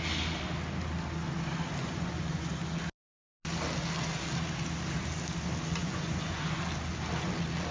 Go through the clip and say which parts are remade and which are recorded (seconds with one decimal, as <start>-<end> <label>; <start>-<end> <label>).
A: 0.0-1.8 recorded; 1.8-2.6 remade; 2.6-5.8 recorded; 5.8-6.6 remade; 6.6-7.7 recorded